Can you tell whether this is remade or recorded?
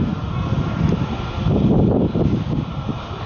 recorded